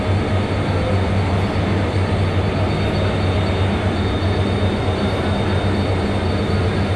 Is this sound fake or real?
real